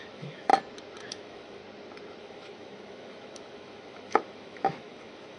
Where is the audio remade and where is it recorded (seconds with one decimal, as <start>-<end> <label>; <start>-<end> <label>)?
0.0-0.5 remade; 0.5-1.1 recorded; 1.1-1.6 remade; 1.6-2.2 recorded; 2.2-5.4 remade